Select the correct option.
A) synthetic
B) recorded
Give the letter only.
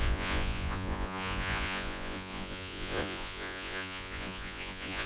A